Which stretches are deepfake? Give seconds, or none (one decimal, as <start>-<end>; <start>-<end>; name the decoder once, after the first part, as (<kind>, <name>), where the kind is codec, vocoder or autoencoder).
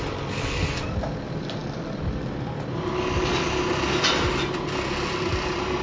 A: none